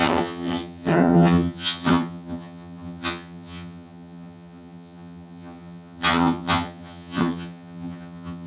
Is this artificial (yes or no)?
yes